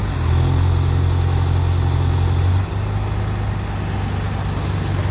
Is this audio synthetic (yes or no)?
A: no